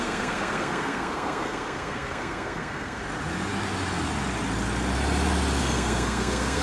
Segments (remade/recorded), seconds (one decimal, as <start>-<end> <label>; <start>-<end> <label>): 0.0-3.0 remade; 3.0-5.6 recorded; 5.6-6.6 remade